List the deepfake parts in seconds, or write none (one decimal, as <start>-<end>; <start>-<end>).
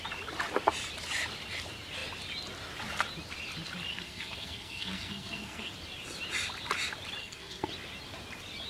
3.9-5.7; 7.2-7.7